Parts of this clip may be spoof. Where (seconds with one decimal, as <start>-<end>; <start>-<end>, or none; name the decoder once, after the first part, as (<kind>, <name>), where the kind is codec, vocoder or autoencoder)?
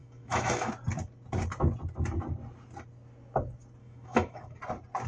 0.0-0.7 (autoencoder, DAC-VAE); 3.8-4.6